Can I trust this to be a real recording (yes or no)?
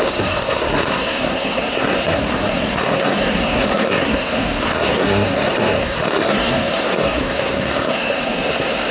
no